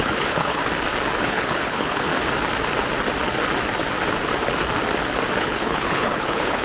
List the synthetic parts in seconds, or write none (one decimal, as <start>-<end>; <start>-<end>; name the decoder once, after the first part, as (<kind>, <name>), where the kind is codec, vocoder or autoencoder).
0.0-0.6 (codec, HILCodec); 1.2-2.1; 5.4-6.6